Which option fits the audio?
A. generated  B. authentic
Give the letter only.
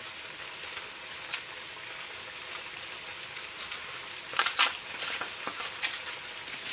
B